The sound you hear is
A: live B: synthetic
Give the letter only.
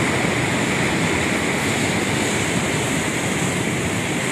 A